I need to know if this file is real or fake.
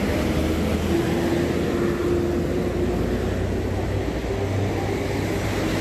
real